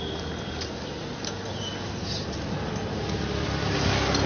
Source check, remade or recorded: recorded